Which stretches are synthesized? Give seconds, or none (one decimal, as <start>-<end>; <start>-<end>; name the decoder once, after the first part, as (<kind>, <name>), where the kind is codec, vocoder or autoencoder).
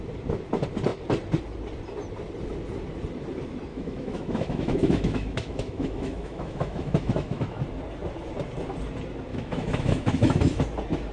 3.7-7.6 (autoencoder, DAC-VAE); 9.3-10.6